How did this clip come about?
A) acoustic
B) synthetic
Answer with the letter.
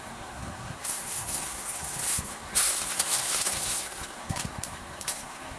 B